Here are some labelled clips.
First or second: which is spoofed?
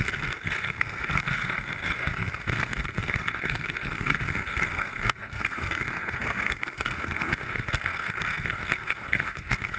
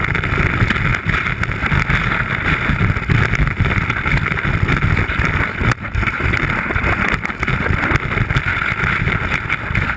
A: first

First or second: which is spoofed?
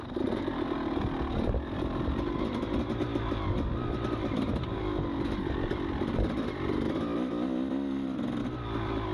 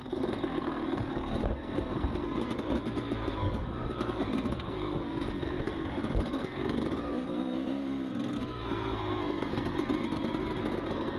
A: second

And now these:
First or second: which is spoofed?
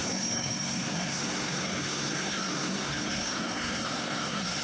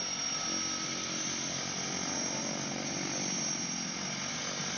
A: first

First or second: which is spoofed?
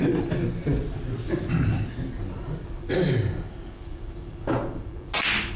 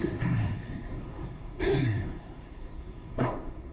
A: second